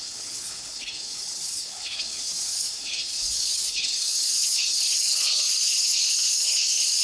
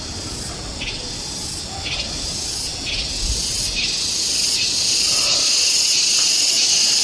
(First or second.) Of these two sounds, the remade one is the first